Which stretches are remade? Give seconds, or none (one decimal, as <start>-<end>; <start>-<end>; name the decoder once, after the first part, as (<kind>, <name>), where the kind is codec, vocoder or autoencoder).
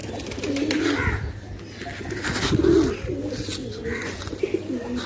3.6-4.2 (vocoder, Vocos)